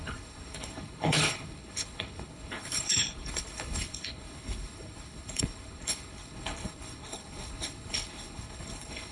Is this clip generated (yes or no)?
yes